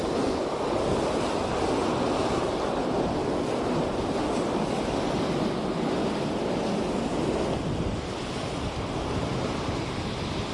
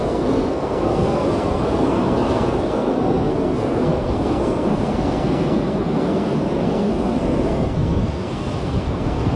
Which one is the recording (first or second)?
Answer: first